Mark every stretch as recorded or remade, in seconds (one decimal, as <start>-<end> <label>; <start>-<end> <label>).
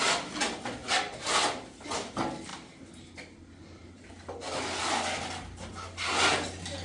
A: 0.0-6.8 recorded